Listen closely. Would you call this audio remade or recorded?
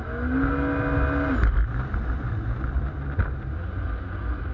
recorded